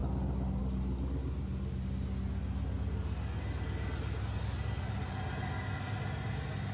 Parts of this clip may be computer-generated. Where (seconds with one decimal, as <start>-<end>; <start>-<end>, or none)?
none

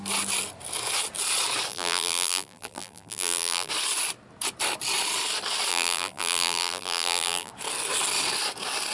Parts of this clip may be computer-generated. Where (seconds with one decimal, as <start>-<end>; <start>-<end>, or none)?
1.7-3.7; 5.7-7.5

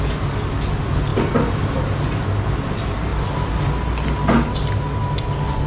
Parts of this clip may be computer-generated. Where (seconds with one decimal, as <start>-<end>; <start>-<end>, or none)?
none